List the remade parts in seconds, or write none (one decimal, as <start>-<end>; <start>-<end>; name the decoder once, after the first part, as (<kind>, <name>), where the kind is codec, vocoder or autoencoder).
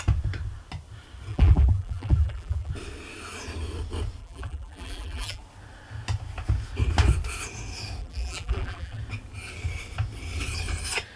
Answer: 1.3-2.7 (vocoder, BigVGAN v2); 4.2-5.4; 8.0-9.0